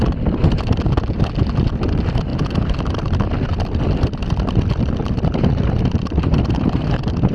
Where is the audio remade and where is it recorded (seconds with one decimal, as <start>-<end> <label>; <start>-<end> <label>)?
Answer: 0.0-7.3 recorded